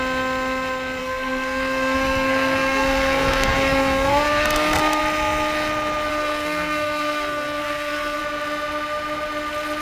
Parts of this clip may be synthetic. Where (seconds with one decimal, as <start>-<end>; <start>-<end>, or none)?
1.0-5.0; 6.1-8.2